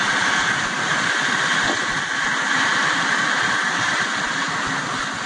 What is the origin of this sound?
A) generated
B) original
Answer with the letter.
B